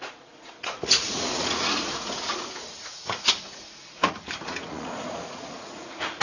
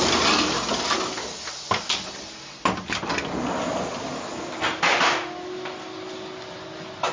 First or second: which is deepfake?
first